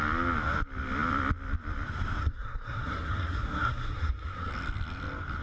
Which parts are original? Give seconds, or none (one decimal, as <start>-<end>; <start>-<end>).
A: 0.0-2.2; 4.5-5.4